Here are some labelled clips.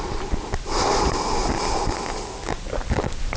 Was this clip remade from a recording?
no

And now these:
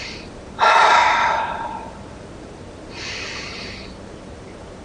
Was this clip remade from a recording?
yes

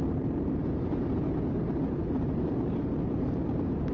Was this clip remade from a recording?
yes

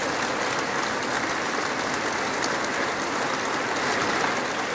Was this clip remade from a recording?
no